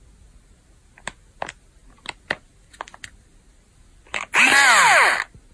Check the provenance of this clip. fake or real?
real